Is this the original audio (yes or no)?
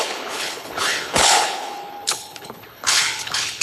no